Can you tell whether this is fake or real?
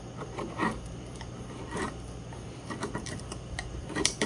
real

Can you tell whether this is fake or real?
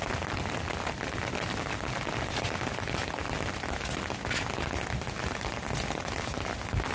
real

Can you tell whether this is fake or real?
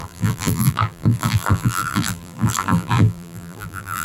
fake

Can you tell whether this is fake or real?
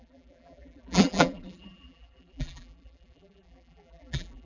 fake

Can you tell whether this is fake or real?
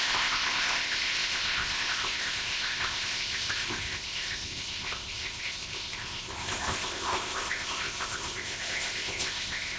fake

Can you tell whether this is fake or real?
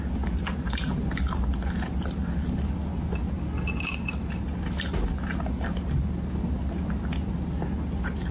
real